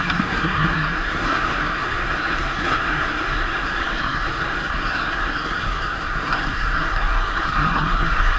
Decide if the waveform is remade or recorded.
remade